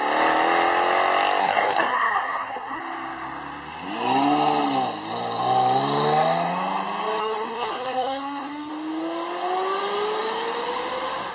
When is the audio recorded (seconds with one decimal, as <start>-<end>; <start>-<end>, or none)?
0.0-1.4; 2.8-7.2; 8.7-11.3